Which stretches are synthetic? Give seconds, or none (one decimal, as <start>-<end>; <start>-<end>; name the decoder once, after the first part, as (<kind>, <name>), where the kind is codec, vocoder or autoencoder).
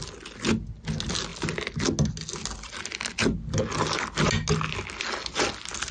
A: none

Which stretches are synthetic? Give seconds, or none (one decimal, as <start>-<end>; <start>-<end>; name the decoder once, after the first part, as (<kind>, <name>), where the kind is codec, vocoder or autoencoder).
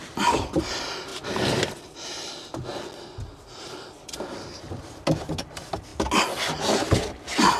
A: none